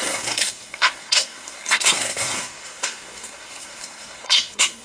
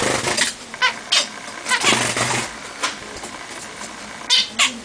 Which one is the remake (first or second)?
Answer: first